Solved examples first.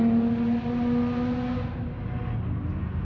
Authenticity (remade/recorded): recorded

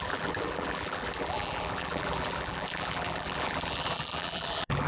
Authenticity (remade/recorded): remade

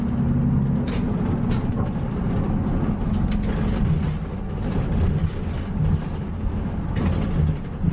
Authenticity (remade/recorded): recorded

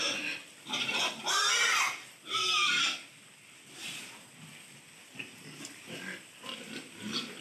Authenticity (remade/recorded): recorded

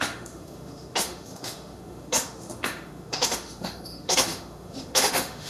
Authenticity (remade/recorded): remade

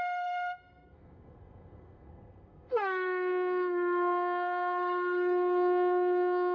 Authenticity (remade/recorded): remade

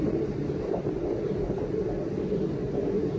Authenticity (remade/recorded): recorded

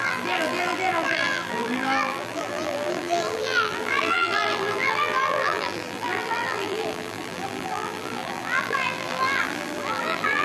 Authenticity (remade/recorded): remade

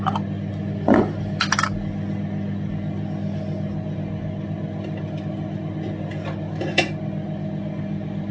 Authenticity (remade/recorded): recorded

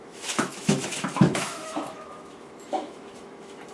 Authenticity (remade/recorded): remade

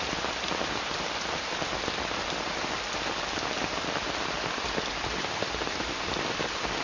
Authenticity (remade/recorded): remade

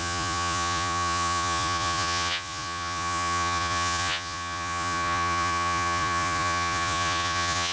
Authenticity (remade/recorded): remade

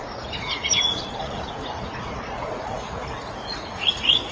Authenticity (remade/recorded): remade